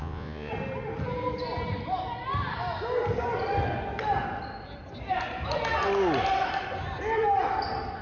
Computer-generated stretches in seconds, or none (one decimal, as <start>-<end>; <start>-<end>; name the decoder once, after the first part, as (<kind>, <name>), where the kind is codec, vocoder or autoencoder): 0.0-0.5 (vocoder, Vocos)

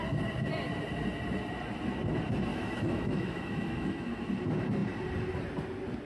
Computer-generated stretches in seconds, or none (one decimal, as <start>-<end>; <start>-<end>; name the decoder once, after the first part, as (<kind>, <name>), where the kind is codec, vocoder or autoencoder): 2.5-4.3 (autoencoder, DAC-VAE)

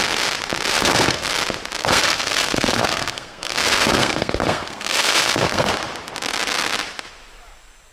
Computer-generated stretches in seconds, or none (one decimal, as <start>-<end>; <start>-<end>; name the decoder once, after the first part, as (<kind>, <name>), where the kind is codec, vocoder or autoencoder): 0.7-1.3 (codec, SNAC); 1.8-5.7

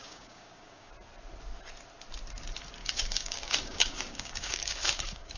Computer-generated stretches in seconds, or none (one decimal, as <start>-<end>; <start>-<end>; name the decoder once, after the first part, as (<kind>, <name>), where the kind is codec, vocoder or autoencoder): 0.0-0.9 (codec, DAC); 2.8-5.4

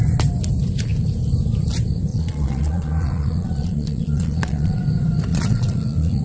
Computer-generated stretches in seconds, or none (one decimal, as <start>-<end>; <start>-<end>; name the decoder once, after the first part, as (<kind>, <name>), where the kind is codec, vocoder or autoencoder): 2.1-4.8 (vocoder, Vocos); 5.3-6.2

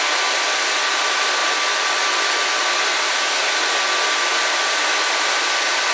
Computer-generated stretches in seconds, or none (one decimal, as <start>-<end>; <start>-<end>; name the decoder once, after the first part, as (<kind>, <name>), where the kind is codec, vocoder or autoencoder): 4.3-5.4 (vocoder, BigVGAN v2)